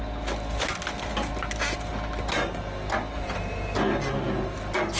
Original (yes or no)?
yes